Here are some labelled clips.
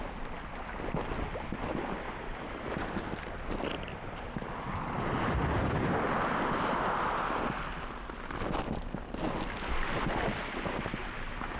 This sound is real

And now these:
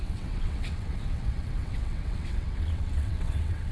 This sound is fake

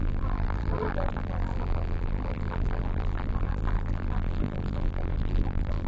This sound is fake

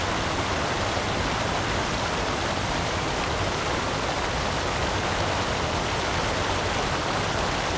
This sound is real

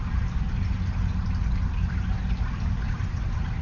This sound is real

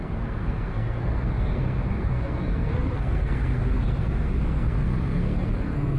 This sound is fake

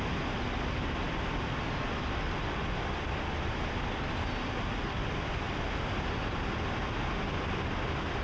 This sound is real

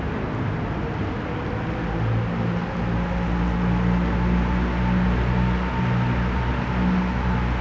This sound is real